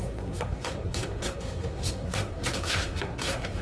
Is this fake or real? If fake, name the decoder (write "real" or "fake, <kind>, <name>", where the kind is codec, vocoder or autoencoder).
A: fake, codec, SNAC